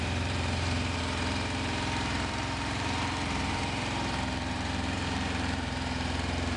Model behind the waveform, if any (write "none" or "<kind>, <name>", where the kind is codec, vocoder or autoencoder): vocoder, BigVGAN v2